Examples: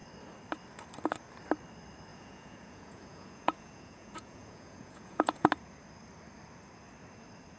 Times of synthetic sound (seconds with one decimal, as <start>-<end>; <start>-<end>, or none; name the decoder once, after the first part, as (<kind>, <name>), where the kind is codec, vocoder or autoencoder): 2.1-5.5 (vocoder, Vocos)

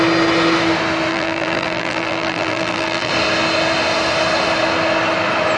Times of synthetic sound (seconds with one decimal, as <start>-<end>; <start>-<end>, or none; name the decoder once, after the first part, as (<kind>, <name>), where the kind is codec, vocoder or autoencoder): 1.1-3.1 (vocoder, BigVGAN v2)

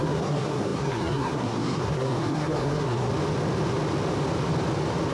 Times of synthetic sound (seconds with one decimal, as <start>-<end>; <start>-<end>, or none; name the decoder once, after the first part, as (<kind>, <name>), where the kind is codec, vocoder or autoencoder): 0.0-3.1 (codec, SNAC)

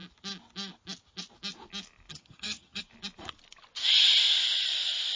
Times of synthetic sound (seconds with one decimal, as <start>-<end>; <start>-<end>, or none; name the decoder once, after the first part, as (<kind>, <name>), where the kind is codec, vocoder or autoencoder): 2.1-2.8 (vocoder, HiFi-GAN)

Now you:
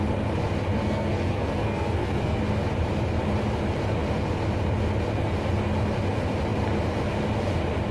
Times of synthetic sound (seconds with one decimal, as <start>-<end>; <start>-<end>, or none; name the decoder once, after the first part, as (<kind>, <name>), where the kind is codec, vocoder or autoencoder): 0.7-2.4 (codec, SNAC)

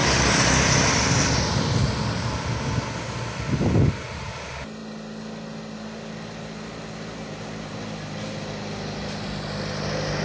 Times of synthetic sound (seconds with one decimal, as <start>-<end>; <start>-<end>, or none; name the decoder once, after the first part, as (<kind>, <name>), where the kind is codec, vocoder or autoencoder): none

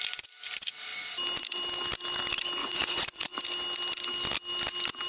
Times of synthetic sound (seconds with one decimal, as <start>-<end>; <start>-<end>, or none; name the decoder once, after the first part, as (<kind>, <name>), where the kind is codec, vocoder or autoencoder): 2.6-3.4 (vocoder, Vocos)

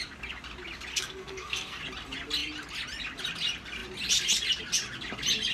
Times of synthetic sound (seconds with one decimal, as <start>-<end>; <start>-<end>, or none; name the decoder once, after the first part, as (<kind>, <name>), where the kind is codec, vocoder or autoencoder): 0.9-1.8 (codec, SNAC)